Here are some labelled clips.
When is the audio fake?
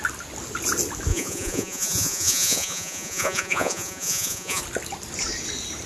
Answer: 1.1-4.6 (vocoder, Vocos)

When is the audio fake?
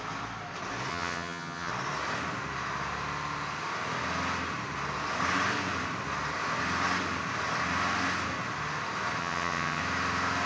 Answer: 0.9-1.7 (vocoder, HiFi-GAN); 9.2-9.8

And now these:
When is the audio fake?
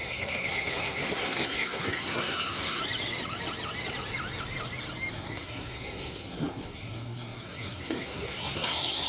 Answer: 0.0-2.8 (codec, SNAC); 5.1-9.1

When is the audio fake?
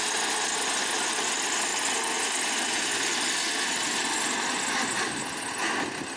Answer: none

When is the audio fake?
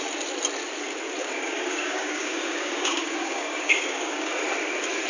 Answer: 1.2-4.3 (codec, DAC)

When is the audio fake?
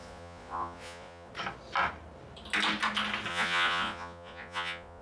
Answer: 0.0-1.3 (vocoder, Vocos); 3.3-5.0